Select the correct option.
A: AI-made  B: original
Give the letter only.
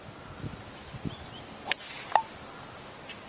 B